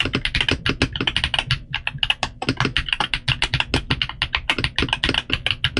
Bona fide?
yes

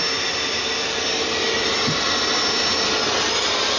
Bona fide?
yes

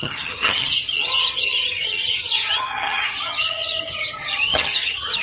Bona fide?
no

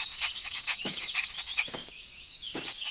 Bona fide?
no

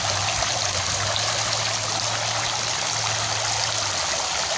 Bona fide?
yes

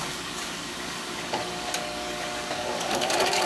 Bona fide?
no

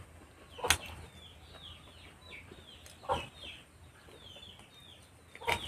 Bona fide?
yes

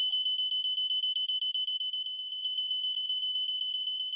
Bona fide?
no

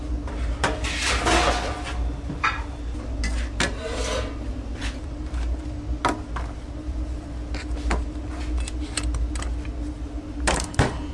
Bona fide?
yes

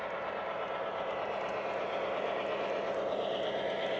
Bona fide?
yes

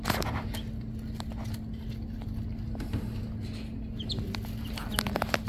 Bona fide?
yes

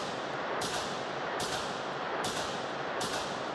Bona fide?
yes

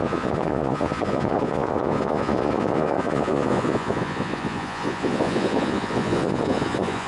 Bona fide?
no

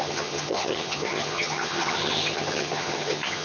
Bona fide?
no